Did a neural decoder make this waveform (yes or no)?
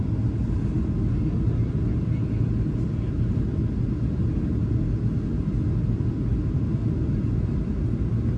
no